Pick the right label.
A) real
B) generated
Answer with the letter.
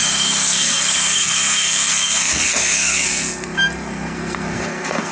B